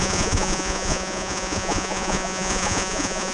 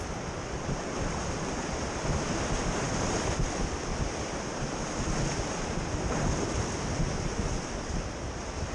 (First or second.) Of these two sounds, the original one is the second